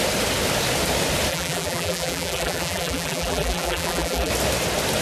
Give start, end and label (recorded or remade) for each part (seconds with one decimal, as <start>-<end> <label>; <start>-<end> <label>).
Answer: 0.0-1.3 recorded; 1.3-4.3 remade; 4.3-5.0 recorded